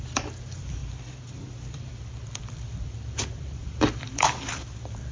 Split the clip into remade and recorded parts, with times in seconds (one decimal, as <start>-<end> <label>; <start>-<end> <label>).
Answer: 0.0-5.1 remade

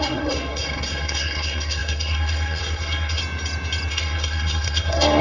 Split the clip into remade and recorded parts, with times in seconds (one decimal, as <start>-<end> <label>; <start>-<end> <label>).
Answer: 0.0-3.2 remade; 3.2-3.9 recorded; 3.9-5.2 remade

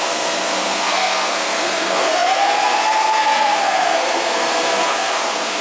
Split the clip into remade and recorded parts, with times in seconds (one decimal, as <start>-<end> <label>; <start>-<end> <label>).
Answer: 0.0-5.6 remade

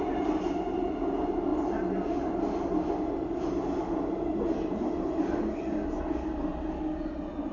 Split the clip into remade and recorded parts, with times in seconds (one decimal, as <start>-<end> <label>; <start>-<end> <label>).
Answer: 0.0-7.5 recorded